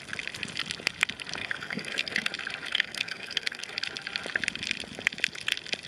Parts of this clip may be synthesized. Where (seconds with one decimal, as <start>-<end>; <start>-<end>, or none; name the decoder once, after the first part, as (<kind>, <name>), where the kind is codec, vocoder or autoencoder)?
1.4-2.3 (codec, SNAC); 2.7-3.7